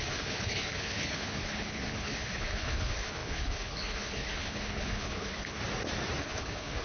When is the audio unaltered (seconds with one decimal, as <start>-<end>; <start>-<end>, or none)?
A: 5.6-6.2